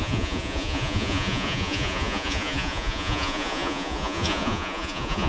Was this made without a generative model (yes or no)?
no